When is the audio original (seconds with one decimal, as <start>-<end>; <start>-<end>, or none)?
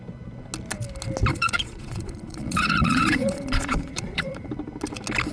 0.0-1.3; 4.5-5.3